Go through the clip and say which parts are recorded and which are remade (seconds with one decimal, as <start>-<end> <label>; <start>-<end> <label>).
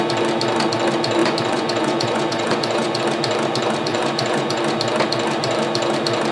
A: 0.0-1.2 recorded; 1.2-3.0 remade; 3.0-3.9 recorded; 3.9-4.6 remade; 4.6-6.3 recorded